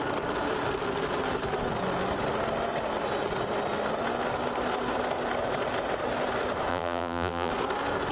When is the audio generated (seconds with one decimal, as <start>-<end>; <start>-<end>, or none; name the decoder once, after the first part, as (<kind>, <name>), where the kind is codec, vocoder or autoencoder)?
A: 6.7-7.5 (vocoder, BigVGAN v2)